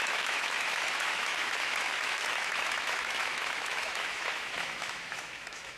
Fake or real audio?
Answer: fake